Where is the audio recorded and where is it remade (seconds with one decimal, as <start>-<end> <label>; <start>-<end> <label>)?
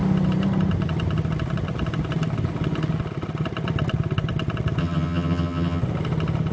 0.0-4.8 recorded; 4.8-5.8 remade; 5.8-6.5 recorded